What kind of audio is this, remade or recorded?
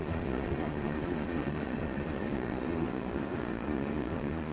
remade